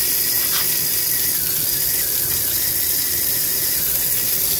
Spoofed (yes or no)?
no